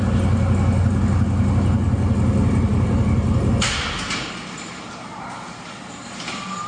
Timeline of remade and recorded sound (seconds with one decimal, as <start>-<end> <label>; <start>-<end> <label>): 0.0-6.7 recorded